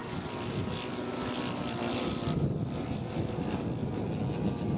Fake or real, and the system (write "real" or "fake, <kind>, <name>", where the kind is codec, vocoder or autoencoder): real